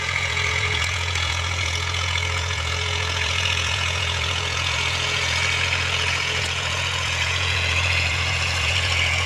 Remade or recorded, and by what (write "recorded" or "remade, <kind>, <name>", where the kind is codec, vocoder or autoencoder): remade, vocoder, Vocos